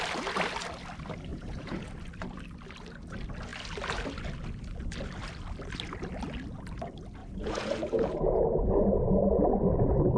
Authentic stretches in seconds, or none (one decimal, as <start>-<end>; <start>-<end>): 0.0-1.3; 1.9-7.2; 9.4-10.2